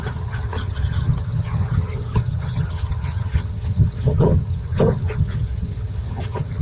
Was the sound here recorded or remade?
remade